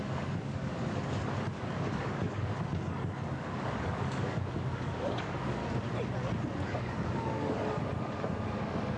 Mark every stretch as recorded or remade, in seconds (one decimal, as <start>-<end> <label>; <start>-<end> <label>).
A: 0.0-5.6 remade; 5.6-6.7 recorded; 6.7-9.0 remade